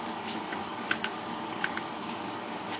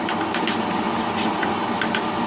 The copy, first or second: first